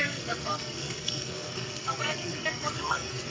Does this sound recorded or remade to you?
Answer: remade